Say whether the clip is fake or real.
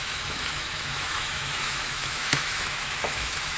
fake